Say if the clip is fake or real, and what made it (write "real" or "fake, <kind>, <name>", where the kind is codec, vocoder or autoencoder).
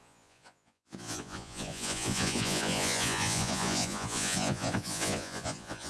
fake, vocoder, Vocos